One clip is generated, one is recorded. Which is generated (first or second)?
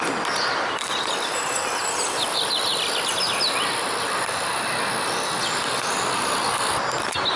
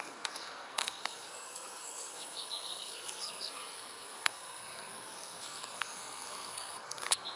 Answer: second